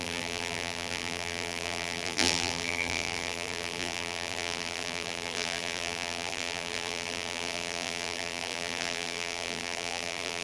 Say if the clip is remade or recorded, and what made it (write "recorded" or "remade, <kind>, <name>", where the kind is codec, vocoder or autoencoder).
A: remade, vocoder, BigVGAN v2